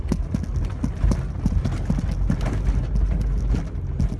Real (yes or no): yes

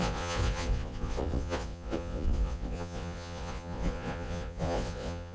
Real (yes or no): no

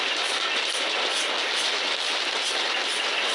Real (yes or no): yes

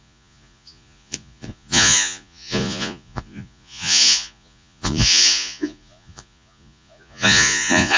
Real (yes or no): no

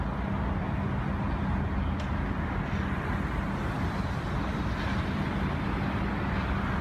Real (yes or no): yes